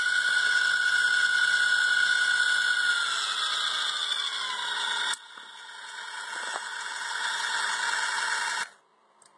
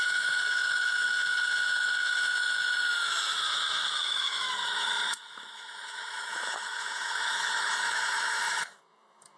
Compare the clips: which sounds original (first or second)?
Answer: first